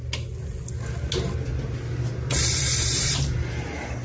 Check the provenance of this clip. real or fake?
real